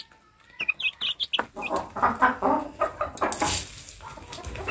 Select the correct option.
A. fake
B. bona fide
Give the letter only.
B